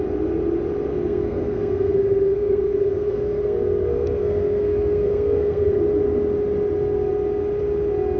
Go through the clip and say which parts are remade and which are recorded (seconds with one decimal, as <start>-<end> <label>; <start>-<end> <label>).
0.0-0.9 recorded; 0.9-5.8 remade; 5.8-8.2 recorded